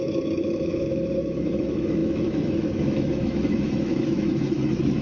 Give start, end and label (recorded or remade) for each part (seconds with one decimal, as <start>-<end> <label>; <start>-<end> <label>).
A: 0.0-5.0 remade